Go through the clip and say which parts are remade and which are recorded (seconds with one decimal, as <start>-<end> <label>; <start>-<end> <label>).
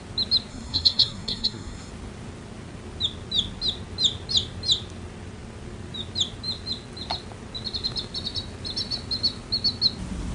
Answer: 0.0-0.5 recorded; 0.5-1.9 remade; 1.9-10.3 recorded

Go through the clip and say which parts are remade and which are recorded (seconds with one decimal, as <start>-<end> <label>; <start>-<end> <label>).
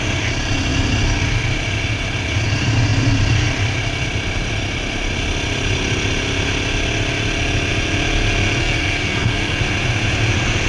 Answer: 0.0-8.6 recorded; 8.6-9.6 remade; 9.6-10.7 recorded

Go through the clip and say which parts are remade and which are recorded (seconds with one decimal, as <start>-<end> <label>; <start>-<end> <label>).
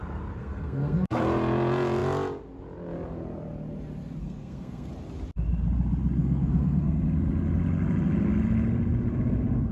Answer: 0.0-0.4 recorded; 0.4-1.2 remade; 1.2-4.2 recorded; 4.2-4.9 remade; 4.9-6.2 recorded; 6.2-7.0 remade; 7.0-9.7 recorded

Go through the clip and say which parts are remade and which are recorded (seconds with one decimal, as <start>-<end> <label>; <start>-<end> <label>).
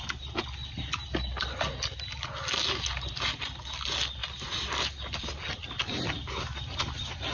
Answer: 0.0-7.3 recorded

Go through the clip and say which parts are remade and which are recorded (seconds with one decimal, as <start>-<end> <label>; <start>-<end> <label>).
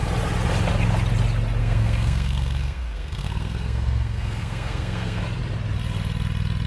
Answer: 0.0-1.6 recorded; 1.6-5.2 remade; 5.2-6.7 recorded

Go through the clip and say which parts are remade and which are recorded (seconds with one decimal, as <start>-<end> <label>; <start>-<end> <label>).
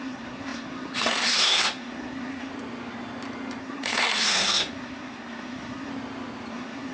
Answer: 0.0-2.5 remade; 2.5-3.6 recorded; 3.6-5.9 remade; 5.9-6.5 recorded; 6.5-6.9 remade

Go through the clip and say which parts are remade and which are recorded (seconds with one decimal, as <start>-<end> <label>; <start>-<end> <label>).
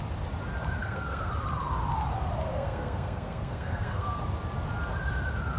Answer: 0.0-0.8 recorded; 0.8-1.3 remade; 1.3-2.5 recorded; 2.5-4.2 remade; 4.2-5.6 recorded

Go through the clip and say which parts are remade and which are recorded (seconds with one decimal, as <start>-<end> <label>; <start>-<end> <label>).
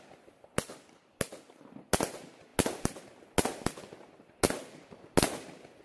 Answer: 0.0-5.8 recorded